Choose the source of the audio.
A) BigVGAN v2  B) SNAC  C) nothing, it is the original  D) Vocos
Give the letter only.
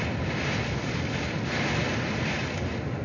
C